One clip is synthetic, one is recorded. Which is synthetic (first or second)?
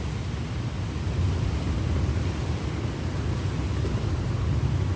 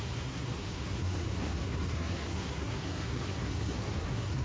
second